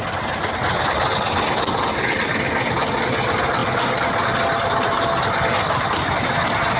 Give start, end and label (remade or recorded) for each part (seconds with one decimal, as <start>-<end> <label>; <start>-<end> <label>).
0.0-6.8 recorded